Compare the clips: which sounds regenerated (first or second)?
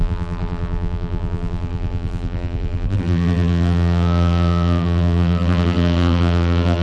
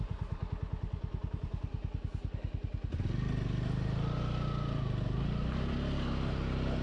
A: first